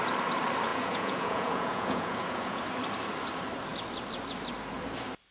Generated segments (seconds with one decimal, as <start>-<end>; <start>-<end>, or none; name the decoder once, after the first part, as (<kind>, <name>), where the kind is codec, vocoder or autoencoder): 0.7-2.6 (vocoder, Vocos)